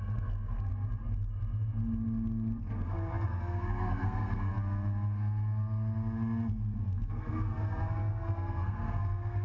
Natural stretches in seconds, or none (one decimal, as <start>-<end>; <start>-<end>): 0.7-2.6; 4.5-6.8